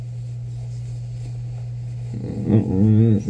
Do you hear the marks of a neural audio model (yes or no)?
no